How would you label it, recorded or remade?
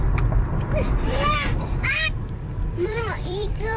remade